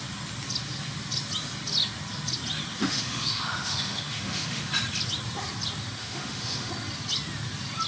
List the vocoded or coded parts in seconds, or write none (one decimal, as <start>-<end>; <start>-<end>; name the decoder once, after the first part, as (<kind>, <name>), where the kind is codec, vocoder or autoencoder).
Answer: 2.8-4.7 (autoencoder, DAC-VAE); 6.0-6.7

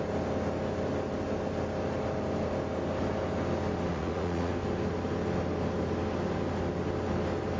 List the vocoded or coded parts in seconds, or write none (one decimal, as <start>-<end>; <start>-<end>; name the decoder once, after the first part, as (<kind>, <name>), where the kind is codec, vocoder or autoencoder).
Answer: 3.9-4.5 (vocoder, Vocos)